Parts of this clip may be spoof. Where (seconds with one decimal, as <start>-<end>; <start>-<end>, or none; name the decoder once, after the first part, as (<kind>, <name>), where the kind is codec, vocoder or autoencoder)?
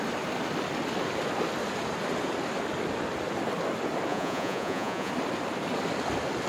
4.1-5.1 (vocoder, Vocos)